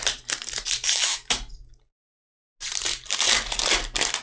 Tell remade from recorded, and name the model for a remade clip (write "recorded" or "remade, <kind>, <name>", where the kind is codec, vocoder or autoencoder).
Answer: recorded